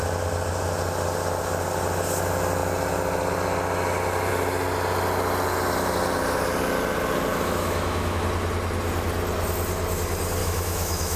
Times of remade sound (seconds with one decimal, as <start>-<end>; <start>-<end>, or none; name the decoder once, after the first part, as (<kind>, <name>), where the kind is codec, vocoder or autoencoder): 7.3-8.2 (autoencoder, DAC-VAE); 10.4-11.2